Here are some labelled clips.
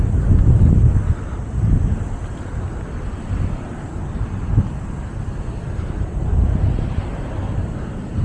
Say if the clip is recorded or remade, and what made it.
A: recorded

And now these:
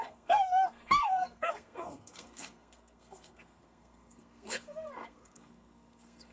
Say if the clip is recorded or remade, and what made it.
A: remade, codec, SNAC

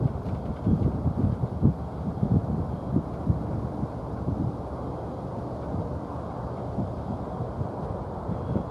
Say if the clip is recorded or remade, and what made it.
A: remade, vocoder, BigVGAN v2